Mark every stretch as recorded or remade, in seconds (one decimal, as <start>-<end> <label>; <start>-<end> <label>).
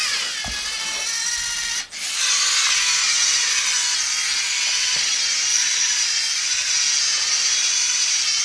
0.0-3.0 recorded; 3.0-3.5 remade; 3.5-5.5 recorded; 5.5-6.4 remade; 6.4-8.4 recorded